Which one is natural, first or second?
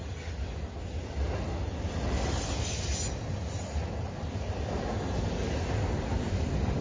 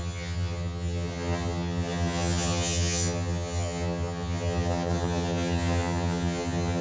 first